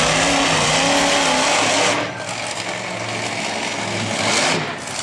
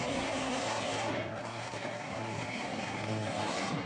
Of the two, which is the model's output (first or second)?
second